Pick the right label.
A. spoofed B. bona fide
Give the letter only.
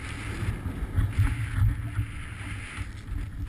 B